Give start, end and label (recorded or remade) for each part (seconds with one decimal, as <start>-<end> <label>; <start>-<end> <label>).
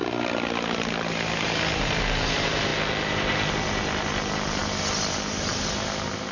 0.0-6.3 recorded